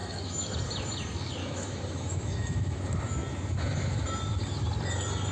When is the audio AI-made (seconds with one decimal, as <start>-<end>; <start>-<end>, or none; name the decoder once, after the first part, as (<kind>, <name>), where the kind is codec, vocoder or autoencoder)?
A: 0.0-0.5 (autoencoder, DAC-VAE); 1.4-2.8